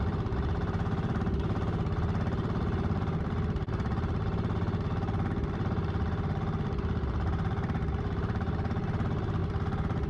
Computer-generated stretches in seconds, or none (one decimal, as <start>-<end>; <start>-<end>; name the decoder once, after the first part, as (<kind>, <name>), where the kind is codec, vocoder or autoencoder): 0.0-10.1 (vocoder, BigVGAN v2)